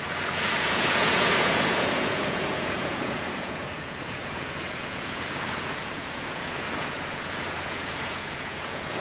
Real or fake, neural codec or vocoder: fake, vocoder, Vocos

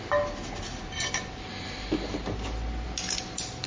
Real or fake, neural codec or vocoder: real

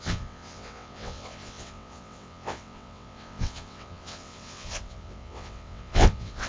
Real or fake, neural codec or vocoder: fake, vocoder, WaveNeXt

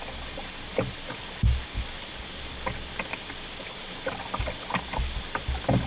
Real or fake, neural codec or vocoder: real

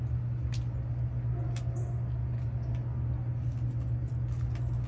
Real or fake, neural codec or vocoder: real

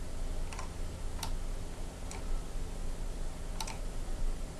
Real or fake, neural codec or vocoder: real